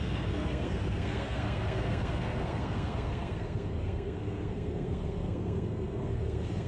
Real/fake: fake